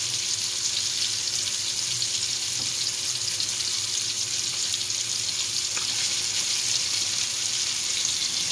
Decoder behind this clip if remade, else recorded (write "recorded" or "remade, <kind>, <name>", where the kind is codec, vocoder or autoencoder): recorded